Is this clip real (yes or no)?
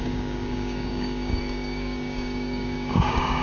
no